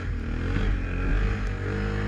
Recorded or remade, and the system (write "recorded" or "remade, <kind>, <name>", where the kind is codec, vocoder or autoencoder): recorded